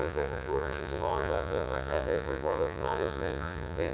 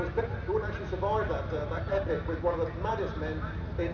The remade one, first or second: first